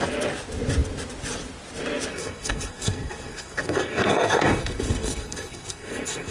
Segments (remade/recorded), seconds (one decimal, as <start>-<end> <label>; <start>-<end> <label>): 0.0-2.1 recorded; 2.1-6.3 remade